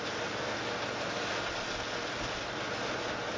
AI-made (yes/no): no